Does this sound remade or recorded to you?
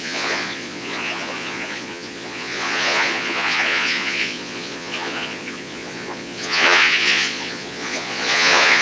remade